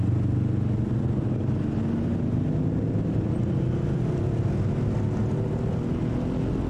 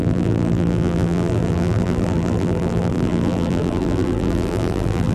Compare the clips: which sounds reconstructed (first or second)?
second